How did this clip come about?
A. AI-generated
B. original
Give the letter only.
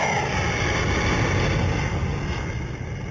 B